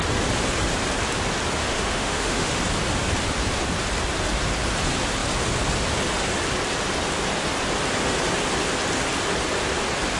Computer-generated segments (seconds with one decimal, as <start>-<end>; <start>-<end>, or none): 1.6-2.6